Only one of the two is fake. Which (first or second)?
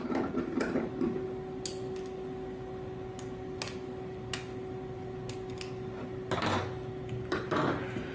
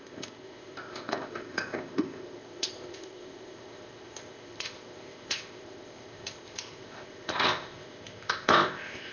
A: second